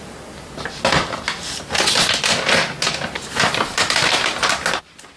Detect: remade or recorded recorded